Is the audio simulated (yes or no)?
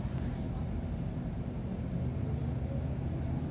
no